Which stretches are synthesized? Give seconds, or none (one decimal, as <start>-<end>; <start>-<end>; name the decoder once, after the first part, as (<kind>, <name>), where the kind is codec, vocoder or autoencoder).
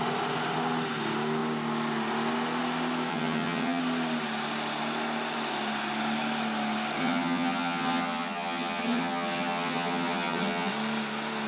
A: 3.1-3.8 (vocoder, HiFi-GAN); 7.0-10.7